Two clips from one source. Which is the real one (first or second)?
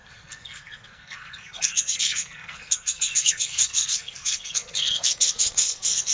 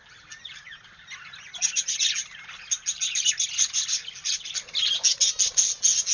second